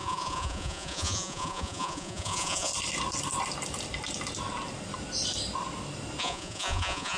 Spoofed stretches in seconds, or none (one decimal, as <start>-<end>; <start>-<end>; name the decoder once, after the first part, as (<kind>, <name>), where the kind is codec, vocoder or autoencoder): 0.0-2.7 (vocoder, Vocos); 6.2-7.2